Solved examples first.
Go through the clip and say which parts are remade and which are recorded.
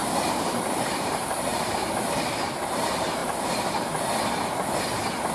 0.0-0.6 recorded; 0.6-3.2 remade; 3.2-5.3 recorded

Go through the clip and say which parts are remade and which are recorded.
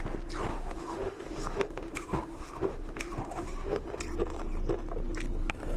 0.0-0.5 recorded; 0.5-4.0 remade; 4.0-5.8 recorded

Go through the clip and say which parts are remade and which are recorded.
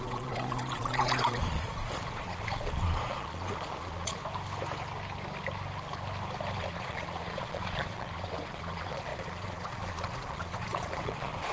0.0-4.2 remade; 4.2-6.6 recorded; 6.6-11.5 remade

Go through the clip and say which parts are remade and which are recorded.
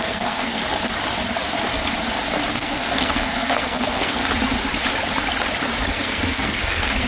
0.0-0.6 remade; 0.6-2.5 recorded; 2.5-4.2 remade; 4.2-5.9 recorded; 5.9-7.1 remade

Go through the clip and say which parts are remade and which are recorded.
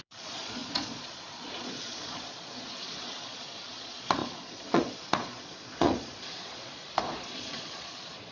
0.0-8.3 remade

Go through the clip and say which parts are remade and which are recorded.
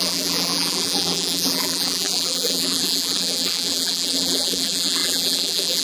0.0-5.8 remade